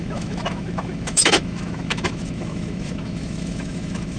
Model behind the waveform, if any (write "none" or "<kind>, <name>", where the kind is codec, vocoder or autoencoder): autoencoder, DAC-VAE